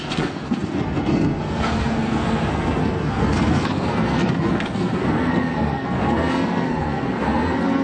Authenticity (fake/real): fake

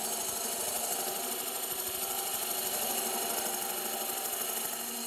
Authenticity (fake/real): real